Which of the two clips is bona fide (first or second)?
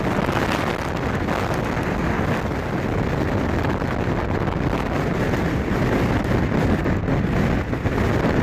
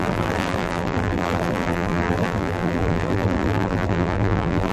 first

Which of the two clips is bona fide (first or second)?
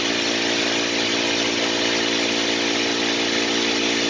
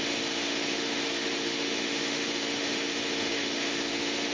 first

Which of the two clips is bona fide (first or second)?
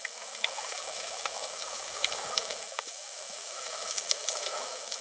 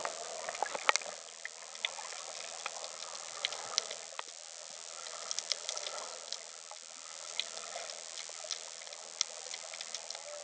second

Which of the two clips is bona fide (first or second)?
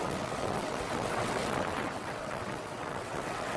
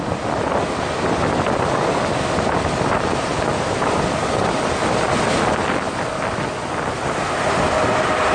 second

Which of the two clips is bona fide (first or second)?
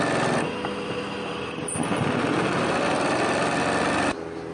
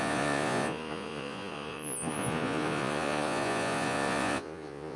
first